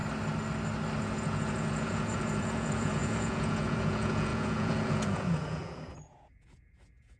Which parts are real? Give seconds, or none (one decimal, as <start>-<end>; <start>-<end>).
0.0-1.0